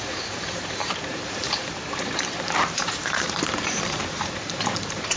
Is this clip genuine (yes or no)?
no